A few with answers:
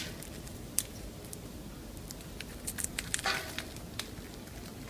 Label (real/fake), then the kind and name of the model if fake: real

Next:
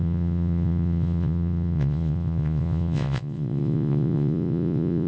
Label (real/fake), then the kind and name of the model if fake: fake, vocoder, Vocos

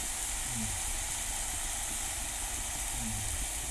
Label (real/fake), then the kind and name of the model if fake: real